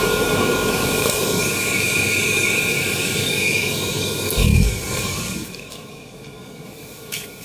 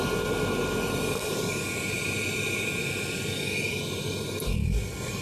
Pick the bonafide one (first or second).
second